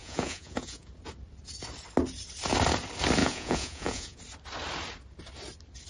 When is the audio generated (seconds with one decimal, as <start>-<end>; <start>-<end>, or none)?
0.0-0.9; 3.2-4.2